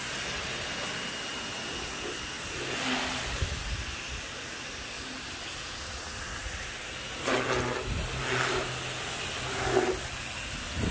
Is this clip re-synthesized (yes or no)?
no